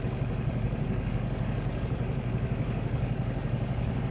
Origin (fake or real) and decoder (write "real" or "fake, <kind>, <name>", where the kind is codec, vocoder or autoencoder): fake, codec, DAC